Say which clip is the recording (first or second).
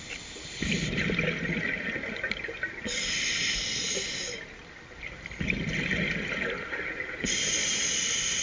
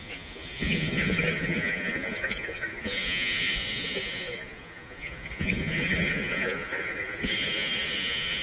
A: first